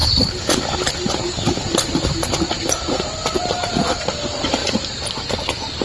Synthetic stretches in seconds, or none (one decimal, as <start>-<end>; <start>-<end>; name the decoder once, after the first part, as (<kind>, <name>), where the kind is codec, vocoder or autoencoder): none

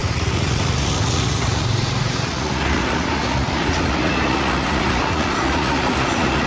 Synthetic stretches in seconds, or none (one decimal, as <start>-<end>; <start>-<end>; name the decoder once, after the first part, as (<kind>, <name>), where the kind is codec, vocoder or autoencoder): 0.0-6.5 (vocoder, Vocos)

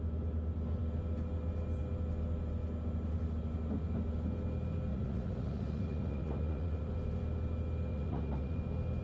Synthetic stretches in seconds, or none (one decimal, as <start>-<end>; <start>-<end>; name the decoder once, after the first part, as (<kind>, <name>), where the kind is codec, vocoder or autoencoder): 4.9-6.9 (vocoder, Vocos); 7.9-8.6

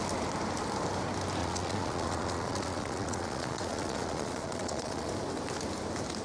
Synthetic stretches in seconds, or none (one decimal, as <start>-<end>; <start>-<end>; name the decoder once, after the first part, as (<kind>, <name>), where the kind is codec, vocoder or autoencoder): 1.4-5.1 (vocoder, Vocos)

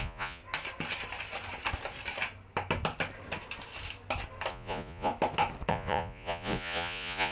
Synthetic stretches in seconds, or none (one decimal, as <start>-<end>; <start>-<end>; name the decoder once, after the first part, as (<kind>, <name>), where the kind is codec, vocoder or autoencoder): 0.0-0.4 (vocoder, Vocos); 4.5-5.1; 5.7-7.3

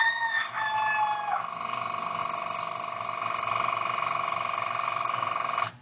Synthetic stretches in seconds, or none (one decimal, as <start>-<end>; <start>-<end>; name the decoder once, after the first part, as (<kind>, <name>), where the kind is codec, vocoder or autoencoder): none

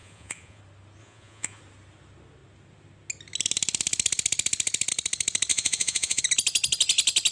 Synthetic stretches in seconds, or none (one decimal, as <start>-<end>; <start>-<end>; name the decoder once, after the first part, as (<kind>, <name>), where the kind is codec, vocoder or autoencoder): 0.0-0.6 (vocoder, Vocos); 1.0-1.6; 5.5-6.2